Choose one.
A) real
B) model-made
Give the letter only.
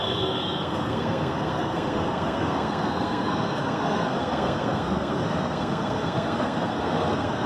B